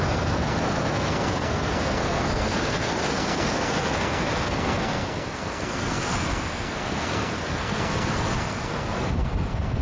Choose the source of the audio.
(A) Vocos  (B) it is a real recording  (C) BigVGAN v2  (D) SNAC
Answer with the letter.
D